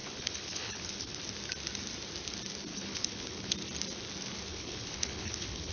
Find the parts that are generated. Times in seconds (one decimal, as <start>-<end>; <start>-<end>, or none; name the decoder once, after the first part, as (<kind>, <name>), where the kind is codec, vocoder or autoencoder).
0.0-1.2 (codec, HILCodec); 2.7-3.5; 4.5-5.7